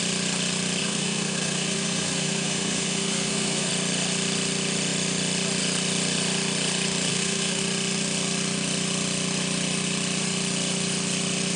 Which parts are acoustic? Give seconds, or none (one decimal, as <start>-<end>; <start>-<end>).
0.0-0.8; 3.7-7.1; 7.6-11.6